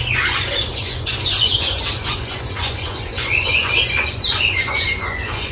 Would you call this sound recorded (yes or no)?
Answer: no